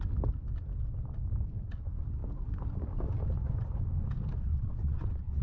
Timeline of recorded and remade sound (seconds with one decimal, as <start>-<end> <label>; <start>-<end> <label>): 0.0-4.5 recorded; 4.5-5.4 remade